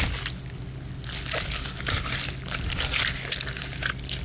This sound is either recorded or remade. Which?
recorded